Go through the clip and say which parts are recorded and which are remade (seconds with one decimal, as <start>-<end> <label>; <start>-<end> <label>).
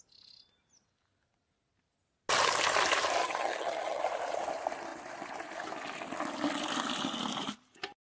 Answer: 0.0-3.2 recorded; 3.2-4.0 remade; 4.0-8.2 recorded